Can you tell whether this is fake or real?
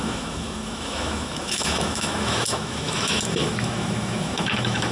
fake